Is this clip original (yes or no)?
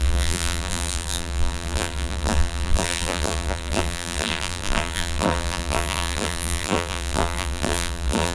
no